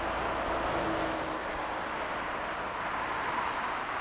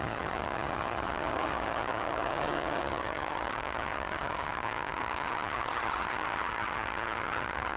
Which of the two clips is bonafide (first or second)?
first